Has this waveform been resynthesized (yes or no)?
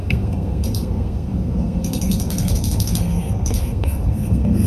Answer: yes